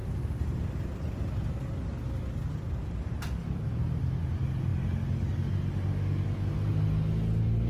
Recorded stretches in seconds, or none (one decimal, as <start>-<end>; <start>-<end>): 0.0-7.7